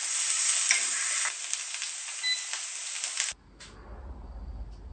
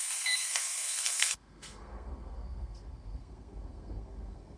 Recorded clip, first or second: first